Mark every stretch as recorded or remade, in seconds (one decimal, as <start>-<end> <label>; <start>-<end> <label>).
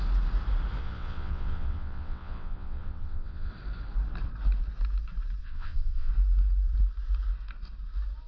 0.0-0.8 recorded; 0.8-3.5 remade; 3.5-5.4 recorded; 5.4-6.1 remade; 6.1-8.3 recorded